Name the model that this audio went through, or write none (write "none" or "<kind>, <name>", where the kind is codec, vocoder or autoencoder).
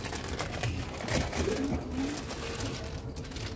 none